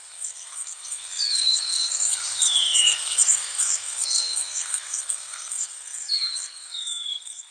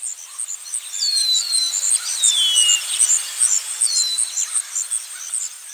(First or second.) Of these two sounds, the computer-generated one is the first